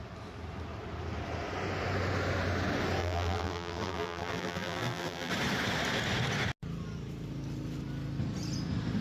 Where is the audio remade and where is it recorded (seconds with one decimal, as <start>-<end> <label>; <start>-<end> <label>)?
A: 0.0-3.0 recorded; 3.0-5.3 remade; 5.3-9.0 recorded